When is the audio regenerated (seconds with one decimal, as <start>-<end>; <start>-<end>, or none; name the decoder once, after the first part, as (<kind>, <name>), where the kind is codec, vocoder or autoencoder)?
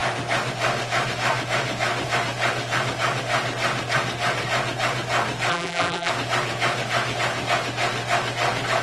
5.5-6.1 (vocoder, BigVGAN v2)